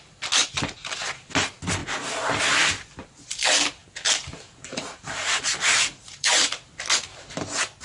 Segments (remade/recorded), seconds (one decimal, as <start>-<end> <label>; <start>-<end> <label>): 0.0-3.8 recorded; 3.8-6.5 remade; 6.5-7.8 recorded